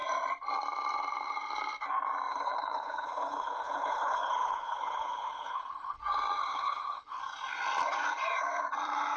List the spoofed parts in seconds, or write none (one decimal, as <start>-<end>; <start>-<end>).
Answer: 2.3-6.0; 6.4-7.2